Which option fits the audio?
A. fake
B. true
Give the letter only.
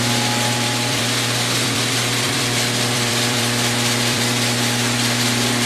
A